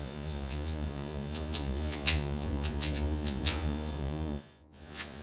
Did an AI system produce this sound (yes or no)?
yes